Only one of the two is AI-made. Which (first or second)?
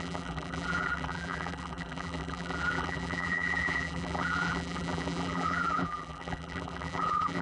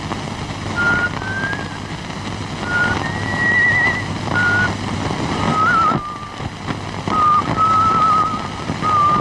first